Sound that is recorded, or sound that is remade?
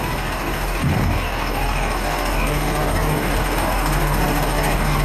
remade